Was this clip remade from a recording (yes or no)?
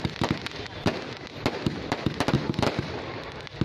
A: no